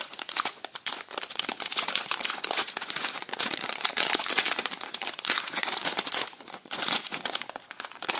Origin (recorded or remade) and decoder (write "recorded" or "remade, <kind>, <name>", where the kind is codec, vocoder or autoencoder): remade, vocoder, Vocos